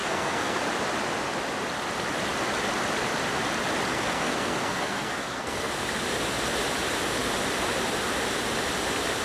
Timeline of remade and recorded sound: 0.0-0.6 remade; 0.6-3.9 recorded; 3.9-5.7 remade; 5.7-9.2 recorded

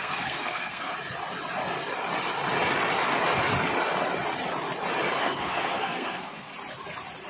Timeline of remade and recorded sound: 0.0-0.9 remade; 0.9-5.2 recorded; 5.2-6.5 remade; 6.5-7.3 recorded

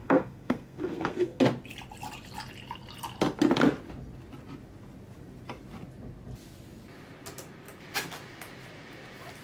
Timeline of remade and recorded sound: 0.0-1.4 remade; 1.4-9.4 recorded